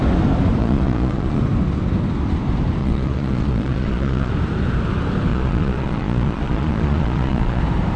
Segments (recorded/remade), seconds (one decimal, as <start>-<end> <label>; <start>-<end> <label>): 0.0-0.6 recorded; 0.6-1.4 remade; 1.4-2.8 recorded; 2.8-4.3 remade; 4.3-5.3 recorded; 5.3-7.6 remade; 7.6-8.0 recorded